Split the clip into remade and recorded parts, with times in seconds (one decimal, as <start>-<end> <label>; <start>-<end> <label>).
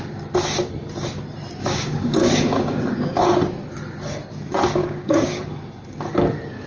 0.0-1.6 recorded; 1.6-3.2 remade; 3.2-4.8 recorded; 4.8-5.4 remade; 5.4-6.7 recorded